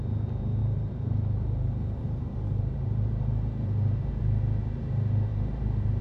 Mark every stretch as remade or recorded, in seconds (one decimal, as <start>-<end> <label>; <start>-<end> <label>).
0.0-0.6 recorded; 0.6-4.2 remade; 4.2-5.3 recorded; 5.3-6.0 remade